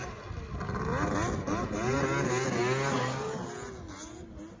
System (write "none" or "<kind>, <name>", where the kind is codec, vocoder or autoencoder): none